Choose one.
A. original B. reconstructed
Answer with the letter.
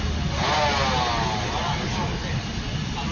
A